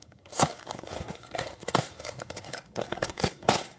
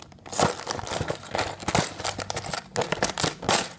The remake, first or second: first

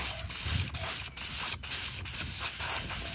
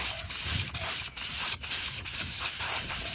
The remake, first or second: second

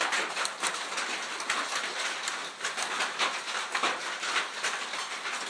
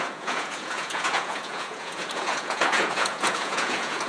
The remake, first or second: second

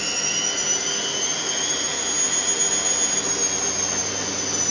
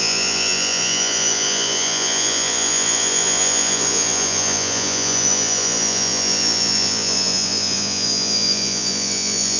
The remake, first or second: second